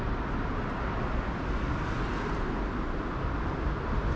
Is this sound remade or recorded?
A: recorded